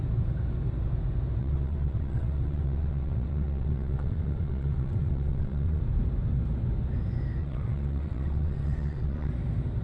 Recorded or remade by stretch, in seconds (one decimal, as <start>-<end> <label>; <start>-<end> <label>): 0.0-1.4 recorded; 1.4-5.8 remade; 5.8-7.4 recorded; 7.4-9.3 remade; 9.3-9.8 recorded